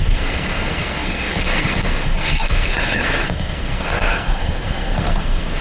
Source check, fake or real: fake